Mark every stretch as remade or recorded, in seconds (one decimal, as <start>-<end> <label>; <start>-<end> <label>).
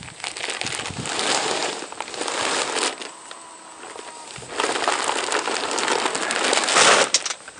0.0-1.6 recorded; 1.6-2.4 remade; 2.4-7.6 recorded